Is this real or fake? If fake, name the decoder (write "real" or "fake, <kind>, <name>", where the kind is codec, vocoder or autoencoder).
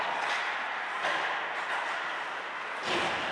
real